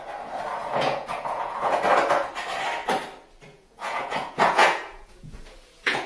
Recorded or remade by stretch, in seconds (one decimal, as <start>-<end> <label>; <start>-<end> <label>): 0.0-0.6 recorded; 0.6-1.8 remade; 1.8-3.5 recorded; 3.5-6.1 remade